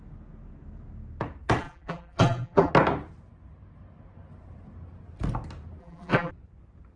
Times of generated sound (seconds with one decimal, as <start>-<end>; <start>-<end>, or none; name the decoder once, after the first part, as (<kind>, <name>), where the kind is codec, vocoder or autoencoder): 1.6-2.7 (vocoder, BigVGAN v2); 5.8-6.3

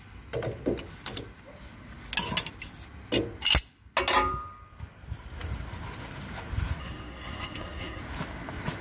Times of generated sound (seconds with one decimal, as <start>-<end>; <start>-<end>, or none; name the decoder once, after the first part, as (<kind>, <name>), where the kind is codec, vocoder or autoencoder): 6.8-8.0 (codec, SNAC)

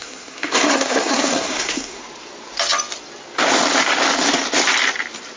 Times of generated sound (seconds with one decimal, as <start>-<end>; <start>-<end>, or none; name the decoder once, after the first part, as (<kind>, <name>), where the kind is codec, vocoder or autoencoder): 0.0-2.0 (codec, SNAC)

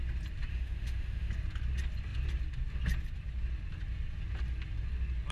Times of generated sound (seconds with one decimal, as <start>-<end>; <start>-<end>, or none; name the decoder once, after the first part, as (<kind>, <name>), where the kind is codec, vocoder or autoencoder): 0.5-1.3 (autoencoder, DAC-VAE)